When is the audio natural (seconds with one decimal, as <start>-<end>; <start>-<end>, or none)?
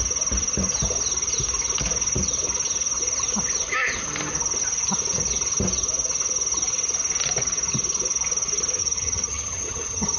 0.0-8.8